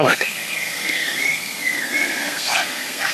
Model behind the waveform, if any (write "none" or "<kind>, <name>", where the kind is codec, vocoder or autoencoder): codec, SNAC